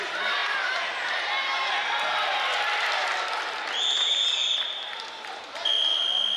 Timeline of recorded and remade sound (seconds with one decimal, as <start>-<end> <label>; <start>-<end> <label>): 0.0-2.5 recorded; 2.5-6.4 remade

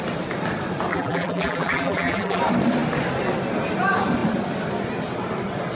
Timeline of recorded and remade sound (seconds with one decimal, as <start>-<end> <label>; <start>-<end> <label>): 0.0-0.9 recorded; 0.9-2.4 remade; 2.4-5.7 recorded

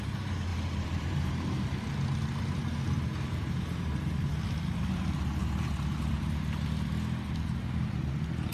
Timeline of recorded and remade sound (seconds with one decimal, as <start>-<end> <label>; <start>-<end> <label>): 0.0-0.5 recorded; 0.5-1.3 remade; 1.3-4.3 recorded; 4.3-5.0 remade; 5.0-8.5 recorded